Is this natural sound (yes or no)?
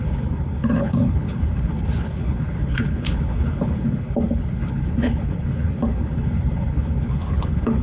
no